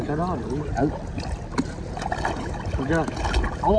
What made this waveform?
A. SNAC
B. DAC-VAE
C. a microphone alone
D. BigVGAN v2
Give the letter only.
C